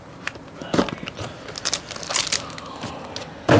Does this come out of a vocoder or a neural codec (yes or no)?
no